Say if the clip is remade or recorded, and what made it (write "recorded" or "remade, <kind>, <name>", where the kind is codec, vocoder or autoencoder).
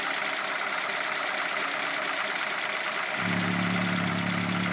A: recorded